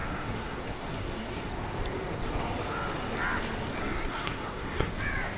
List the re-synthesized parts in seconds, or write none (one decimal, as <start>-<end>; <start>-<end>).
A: 0.0-1.5; 3.8-4.9